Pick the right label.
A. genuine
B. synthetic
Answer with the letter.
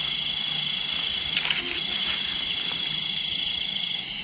A